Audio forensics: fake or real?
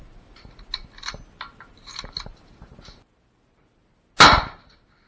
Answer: real